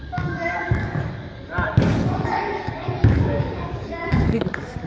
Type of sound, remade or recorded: remade